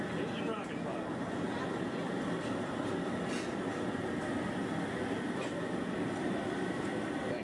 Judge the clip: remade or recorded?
recorded